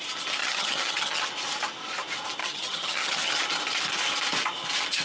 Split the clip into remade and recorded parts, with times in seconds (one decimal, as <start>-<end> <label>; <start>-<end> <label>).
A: 0.0-0.4 recorded; 0.4-1.2 remade; 1.2-2.4 recorded; 2.4-3.4 remade; 3.4-5.0 recorded